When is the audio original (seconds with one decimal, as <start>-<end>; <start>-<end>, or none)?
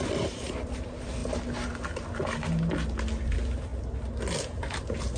0.0-5.2